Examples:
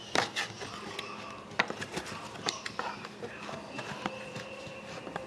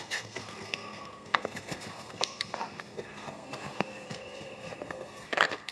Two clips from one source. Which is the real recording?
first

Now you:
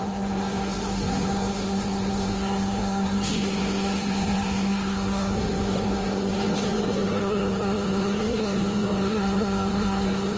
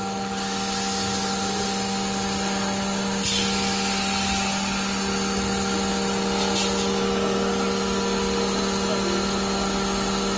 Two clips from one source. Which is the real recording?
second